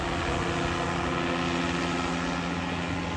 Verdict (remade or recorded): recorded